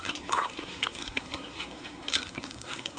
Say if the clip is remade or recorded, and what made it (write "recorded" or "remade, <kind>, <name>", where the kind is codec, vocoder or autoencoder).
remade, codec, SNAC